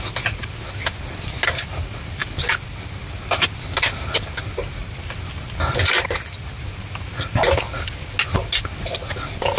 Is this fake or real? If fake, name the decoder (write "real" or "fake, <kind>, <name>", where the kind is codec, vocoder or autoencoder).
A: real